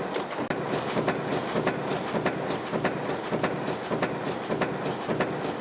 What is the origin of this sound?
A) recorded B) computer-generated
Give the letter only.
A